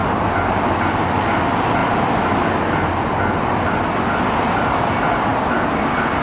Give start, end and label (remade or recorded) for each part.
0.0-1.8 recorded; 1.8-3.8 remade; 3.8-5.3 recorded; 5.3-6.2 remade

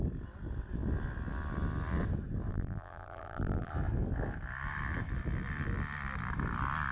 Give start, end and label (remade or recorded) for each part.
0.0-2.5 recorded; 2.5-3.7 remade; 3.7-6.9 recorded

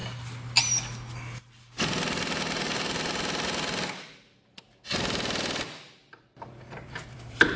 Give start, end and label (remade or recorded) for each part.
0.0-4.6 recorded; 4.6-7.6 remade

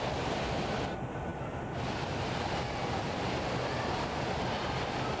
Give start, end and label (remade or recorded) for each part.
0.0-5.2 recorded

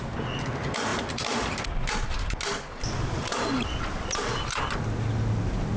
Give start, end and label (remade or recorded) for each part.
0.0-5.8 recorded

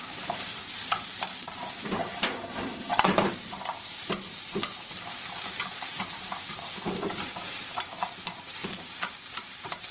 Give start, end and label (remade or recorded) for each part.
0.0-0.6 remade; 0.6-1.3 recorded; 1.3-7.9 remade; 7.9-8.5 recorded; 8.5-9.9 remade

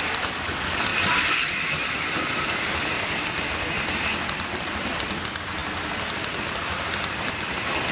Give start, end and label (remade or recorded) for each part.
0.0-7.9 recorded